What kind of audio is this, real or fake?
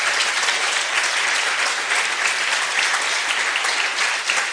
real